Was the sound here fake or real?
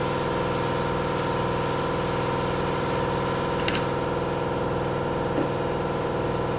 real